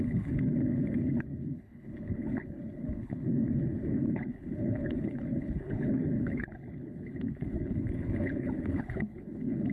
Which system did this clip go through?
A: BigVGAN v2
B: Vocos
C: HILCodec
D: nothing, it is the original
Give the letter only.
C